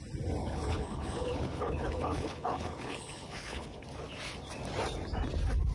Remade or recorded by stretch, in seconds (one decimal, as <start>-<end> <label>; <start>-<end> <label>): 0.0-0.4 recorded; 0.4-3.8 remade; 3.8-5.7 recorded